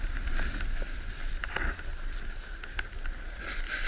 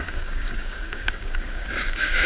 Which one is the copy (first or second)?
second